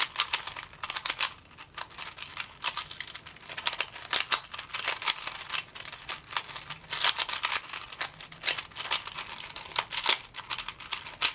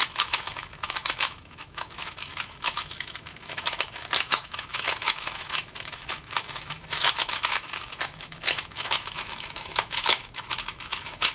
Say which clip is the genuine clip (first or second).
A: first